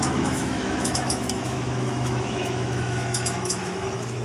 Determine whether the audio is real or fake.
fake